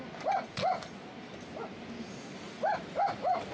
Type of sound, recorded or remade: recorded